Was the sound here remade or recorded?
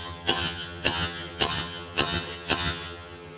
remade